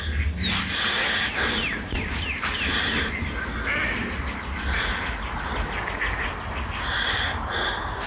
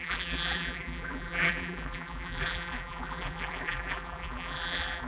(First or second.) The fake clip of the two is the second